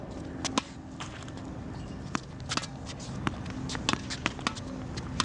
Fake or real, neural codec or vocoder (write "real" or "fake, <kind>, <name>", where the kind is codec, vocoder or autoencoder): real